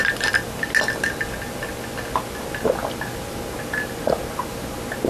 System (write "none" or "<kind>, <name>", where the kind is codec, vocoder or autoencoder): none